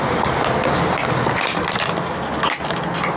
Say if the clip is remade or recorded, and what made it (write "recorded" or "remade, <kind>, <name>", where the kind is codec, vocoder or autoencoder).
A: recorded